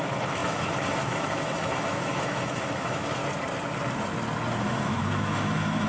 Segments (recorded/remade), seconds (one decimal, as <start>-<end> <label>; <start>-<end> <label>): 0.0-3.2 remade; 3.2-4.6 recorded; 4.6-5.9 remade